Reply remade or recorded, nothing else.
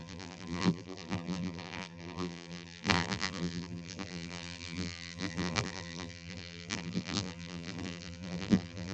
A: remade